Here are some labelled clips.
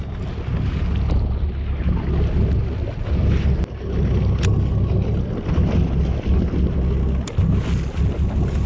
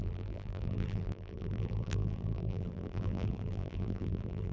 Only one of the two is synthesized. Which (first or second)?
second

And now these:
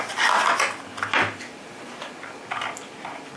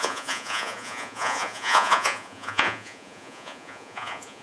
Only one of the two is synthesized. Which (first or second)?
second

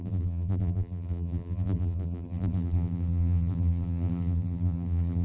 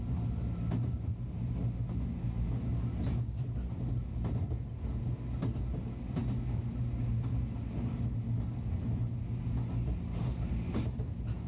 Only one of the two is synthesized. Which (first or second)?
first